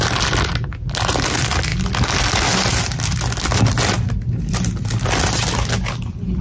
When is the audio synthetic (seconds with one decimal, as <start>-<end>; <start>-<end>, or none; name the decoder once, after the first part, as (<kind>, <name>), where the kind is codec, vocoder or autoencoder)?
none